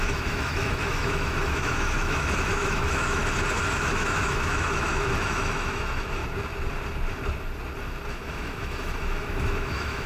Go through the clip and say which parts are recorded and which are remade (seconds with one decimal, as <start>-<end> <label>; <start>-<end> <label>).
0.0-3.2 remade; 3.2-3.8 recorded; 3.8-6.2 remade; 6.2-8.1 recorded; 8.1-10.1 remade